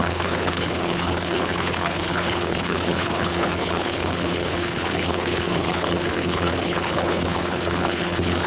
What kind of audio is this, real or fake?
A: fake